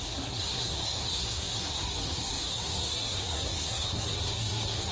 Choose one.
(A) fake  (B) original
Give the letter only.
A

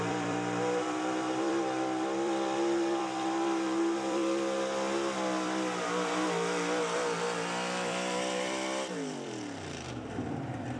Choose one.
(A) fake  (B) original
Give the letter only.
A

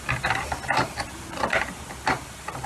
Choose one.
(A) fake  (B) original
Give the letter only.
B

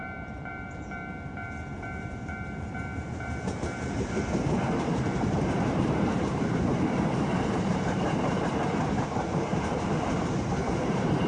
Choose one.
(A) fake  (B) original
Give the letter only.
A